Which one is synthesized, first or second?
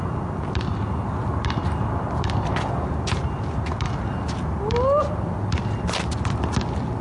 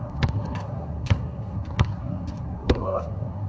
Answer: second